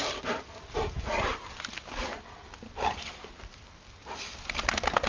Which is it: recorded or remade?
recorded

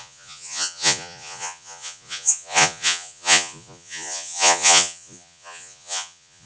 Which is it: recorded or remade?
remade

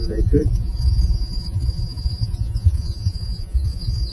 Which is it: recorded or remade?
remade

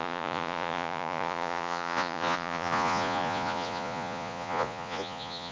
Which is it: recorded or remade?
remade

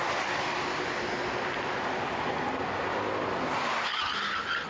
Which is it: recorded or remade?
recorded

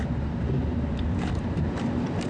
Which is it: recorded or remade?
recorded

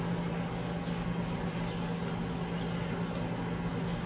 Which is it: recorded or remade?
recorded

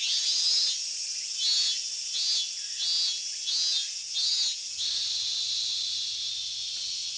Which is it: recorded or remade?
recorded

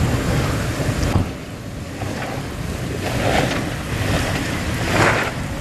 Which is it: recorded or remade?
recorded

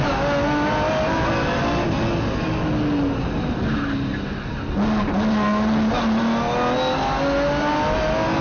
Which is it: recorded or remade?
recorded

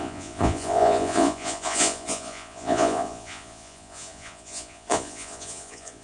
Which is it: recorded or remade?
remade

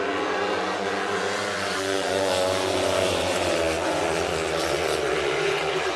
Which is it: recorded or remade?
remade